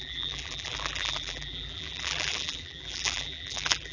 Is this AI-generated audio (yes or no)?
yes